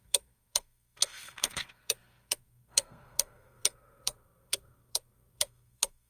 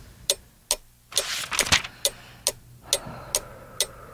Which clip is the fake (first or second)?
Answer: first